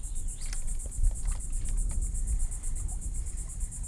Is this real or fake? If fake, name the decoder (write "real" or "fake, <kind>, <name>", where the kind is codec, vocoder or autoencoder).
real